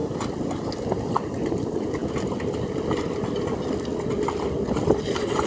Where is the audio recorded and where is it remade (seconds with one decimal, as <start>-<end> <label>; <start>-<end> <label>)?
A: 0.0-5.5 recorded